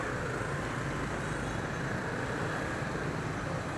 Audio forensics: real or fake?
real